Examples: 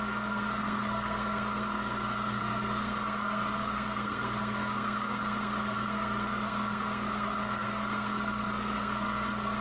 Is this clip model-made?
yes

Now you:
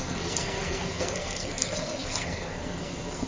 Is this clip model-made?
yes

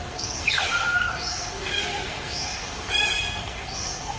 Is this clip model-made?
yes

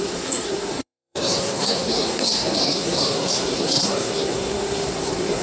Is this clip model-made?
yes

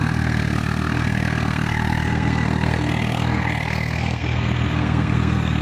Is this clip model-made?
yes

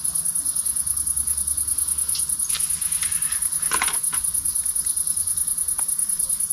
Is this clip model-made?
no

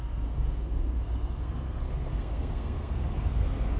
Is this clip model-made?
yes